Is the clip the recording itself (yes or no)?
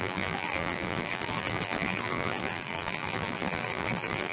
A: no